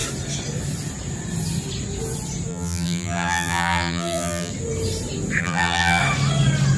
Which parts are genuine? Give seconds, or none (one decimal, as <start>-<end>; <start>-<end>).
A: 0.0-2.5; 4.5-5.4; 6.0-6.8